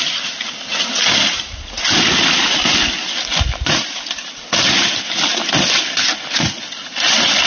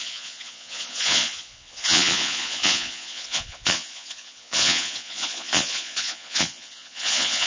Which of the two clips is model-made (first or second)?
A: second